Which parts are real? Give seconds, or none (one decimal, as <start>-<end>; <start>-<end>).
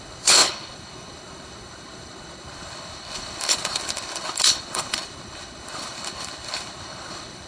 none